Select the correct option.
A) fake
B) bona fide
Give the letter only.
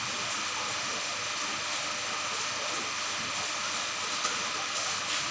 B